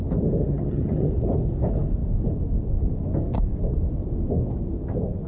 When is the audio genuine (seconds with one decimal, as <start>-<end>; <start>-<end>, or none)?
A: 0.0-0.4; 1.1-5.3